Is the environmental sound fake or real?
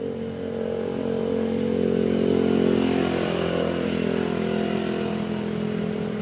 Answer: real